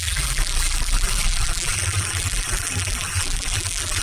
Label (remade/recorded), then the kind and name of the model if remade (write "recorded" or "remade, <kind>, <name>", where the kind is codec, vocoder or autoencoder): remade, vocoder, BigVGAN v2